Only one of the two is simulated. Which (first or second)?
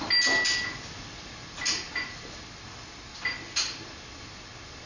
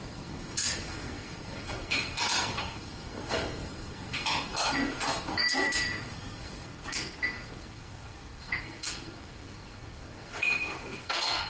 second